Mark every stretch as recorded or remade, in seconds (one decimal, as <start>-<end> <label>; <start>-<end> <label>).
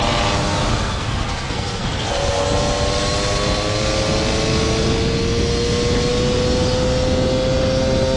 0.0-0.7 recorded; 0.7-2.4 remade; 2.4-8.2 recorded